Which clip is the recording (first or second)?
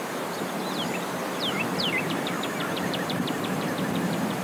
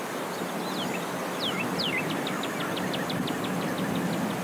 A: second